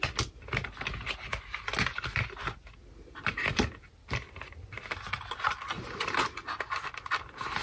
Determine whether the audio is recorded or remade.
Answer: recorded